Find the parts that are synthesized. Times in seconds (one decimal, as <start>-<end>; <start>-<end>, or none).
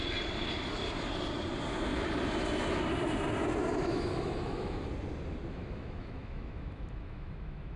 3.8-4.9; 5.5-7.8